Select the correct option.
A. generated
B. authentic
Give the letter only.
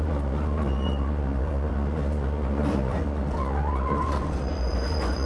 A